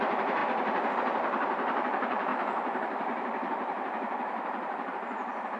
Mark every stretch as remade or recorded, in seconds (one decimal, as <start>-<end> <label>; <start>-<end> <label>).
0.0-0.4 remade; 0.4-0.9 recorded; 0.9-5.6 remade